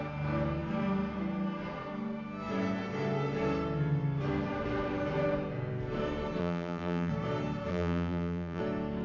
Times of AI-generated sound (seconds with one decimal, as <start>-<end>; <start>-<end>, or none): 6.4-7.1; 7.7-8.6